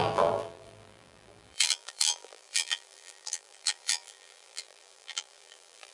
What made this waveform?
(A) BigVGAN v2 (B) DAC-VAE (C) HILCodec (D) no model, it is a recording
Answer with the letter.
A